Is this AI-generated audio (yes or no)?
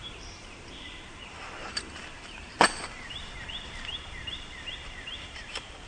yes